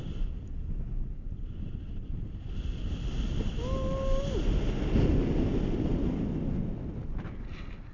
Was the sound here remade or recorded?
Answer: recorded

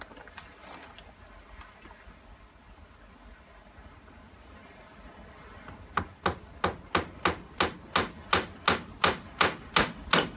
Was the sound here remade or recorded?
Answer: recorded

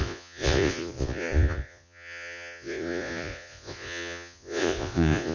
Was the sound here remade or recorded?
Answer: remade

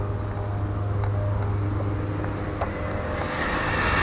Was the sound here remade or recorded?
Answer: recorded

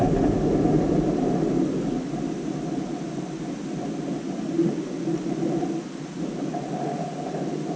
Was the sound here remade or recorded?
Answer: recorded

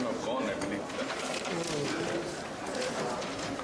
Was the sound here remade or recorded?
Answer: recorded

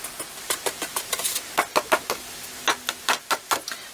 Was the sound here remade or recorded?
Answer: recorded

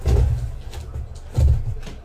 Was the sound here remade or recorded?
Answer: recorded